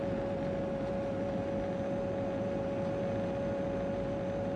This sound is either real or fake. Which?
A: real